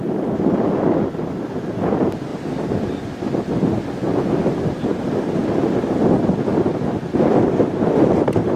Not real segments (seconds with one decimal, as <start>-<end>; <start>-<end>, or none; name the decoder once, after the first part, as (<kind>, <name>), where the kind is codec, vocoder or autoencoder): 4.9-5.4 (vocoder, BigVGAN v2)